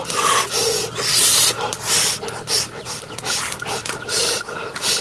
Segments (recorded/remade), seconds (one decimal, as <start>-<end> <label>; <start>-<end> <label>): 0.0-5.0 recorded